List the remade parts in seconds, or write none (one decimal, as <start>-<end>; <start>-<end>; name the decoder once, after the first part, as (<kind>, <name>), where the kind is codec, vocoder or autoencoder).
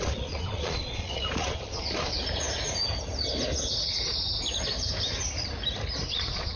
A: 0.0-2.1 (vocoder, Vocos); 6.1-6.6